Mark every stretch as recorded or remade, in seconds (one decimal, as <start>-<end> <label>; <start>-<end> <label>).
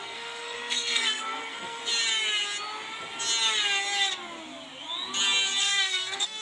0.0-1.8 remade; 1.8-5.6 recorded; 5.6-6.4 remade